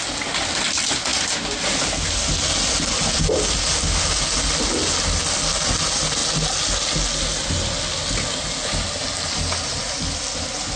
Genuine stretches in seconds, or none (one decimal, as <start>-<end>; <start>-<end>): 0.0-10.8